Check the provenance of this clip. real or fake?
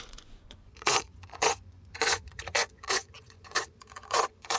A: fake